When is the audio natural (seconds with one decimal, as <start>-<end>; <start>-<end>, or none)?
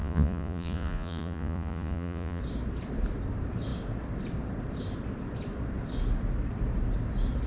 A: 2.4-7.5